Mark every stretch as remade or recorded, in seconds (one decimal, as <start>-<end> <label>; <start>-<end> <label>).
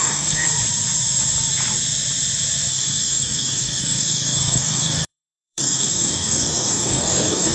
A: 0.0-0.5 remade; 0.5-2.7 recorded; 2.7-7.5 remade